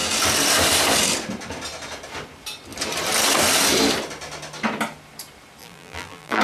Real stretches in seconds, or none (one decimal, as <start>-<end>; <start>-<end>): 0.0-5.6